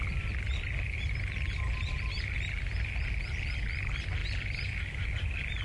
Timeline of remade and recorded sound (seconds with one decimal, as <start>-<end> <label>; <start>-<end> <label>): 0.0-4.2 recorded; 4.2-5.1 remade; 5.1-5.6 recorded